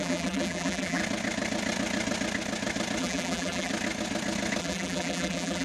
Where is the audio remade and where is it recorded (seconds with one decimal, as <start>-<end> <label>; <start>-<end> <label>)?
0.0-1.0 remade; 1.0-3.0 recorded; 3.0-3.7 remade; 3.7-4.6 recorded; 4.6-5.6 remade